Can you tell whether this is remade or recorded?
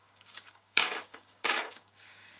remade